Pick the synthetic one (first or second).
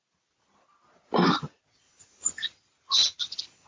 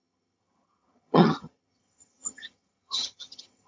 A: second